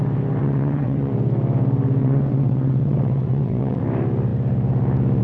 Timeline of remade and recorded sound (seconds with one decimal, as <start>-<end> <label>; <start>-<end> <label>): 0.0-0.4 recorded; 0.4-1.1 remade; 1.1-2.0 recorded; 2.0-3.8 remade; 3.8-5.2 recorded